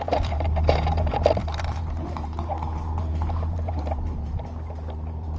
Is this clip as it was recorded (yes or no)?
no